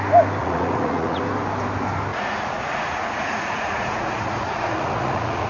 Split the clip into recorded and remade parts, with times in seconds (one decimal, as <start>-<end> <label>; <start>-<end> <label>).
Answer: 0.0-0.4 recorded; 0.4-1.2 remade; 1.2-2.1 recorded; 2.1-5.5 remade